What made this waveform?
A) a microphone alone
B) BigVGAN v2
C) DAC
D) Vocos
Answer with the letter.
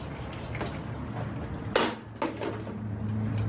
A